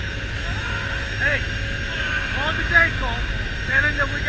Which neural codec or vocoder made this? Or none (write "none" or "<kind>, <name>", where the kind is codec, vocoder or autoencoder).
none